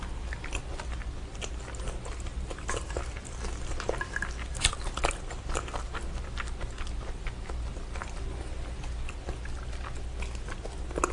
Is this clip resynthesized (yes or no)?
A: no